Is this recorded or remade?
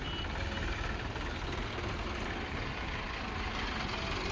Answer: recorded